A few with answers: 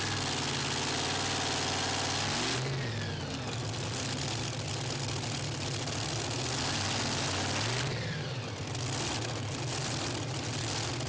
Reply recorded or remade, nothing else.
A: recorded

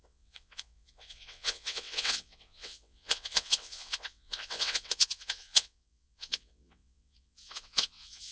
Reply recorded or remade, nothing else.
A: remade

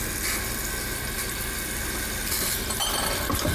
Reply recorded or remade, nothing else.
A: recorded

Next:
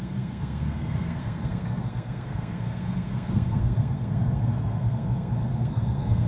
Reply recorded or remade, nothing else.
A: remade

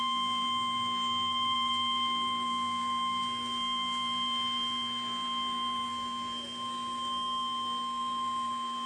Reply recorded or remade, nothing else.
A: remade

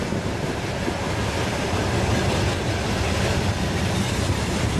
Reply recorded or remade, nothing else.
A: recorded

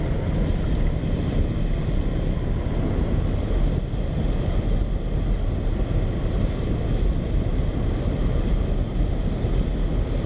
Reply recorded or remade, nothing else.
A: recorded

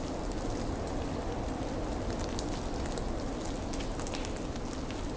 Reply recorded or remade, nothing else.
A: recorded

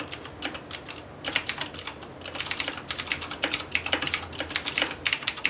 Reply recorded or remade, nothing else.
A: recorded